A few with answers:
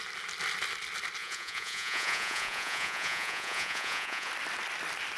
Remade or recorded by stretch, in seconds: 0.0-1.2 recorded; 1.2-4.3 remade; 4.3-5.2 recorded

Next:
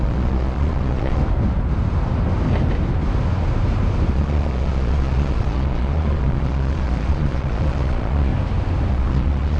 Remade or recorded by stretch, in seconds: 0.0-1.2 remade; 1.2-4.1 recorded; 4.1-8.3 remade; 8.3-8.9 recorded; 8.9-9.6 remade

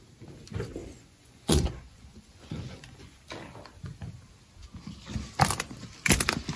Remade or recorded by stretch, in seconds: 0.0-0.8 recorded; 0.8-3.2 remade; 3.2-6.6 recorded

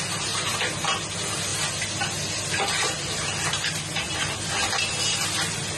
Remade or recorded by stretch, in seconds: 0.0-5.8 recorded

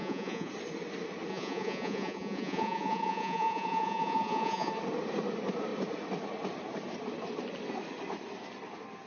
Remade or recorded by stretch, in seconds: 0.0-0.5 remade; 0.5-1.3 recorded; 1.3-4.7 remade; 4.7-9.1 recorded